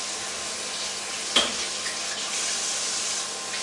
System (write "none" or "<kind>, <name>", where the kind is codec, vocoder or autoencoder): none